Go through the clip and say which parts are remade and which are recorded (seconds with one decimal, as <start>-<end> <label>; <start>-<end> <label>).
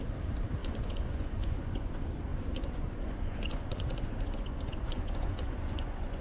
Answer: 0.0-0.6 recorded; 0.6-1.9 remade; 1.9-2.3 recorded; 2.3-6.2 remade